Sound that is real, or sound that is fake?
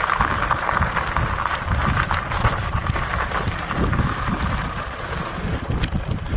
fake